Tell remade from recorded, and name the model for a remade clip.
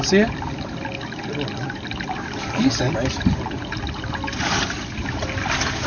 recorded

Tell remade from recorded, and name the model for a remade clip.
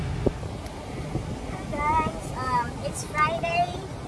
recorded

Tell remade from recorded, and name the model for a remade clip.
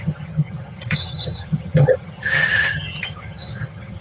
remade, vocoder, HiFi-GAN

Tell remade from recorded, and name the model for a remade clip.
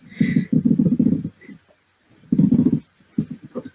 recorded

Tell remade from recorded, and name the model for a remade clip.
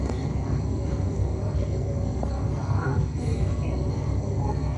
remade, codec, SNAC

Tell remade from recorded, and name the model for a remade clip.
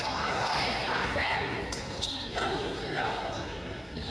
remade, codec, SNAC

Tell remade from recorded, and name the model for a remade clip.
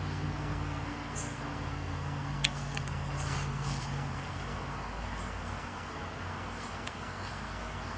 remade, codec, SNAC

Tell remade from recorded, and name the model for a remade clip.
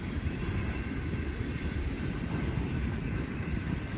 remade, vocoder, BigVGAN v2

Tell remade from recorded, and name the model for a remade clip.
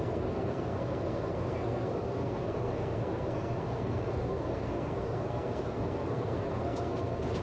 remade, codec, SNAC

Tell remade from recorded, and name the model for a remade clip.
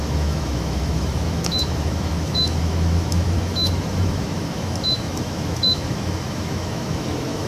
remade, autoencoder, DAC-VAE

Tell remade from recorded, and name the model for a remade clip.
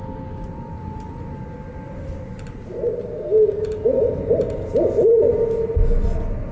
recorded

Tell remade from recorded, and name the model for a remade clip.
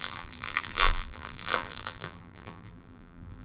remade, vocoder, BigVGAN v2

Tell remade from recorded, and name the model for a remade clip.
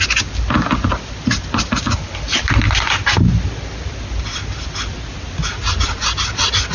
recorded